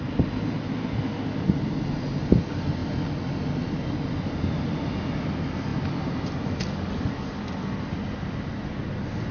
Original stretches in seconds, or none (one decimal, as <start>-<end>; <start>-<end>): 0.0-9.3